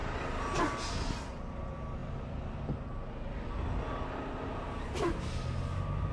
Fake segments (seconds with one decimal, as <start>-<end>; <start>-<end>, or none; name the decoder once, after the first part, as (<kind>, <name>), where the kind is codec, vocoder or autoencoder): none